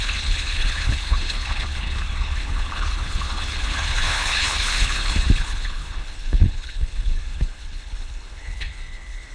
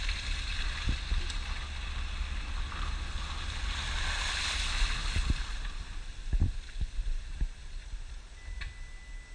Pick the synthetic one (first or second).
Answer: first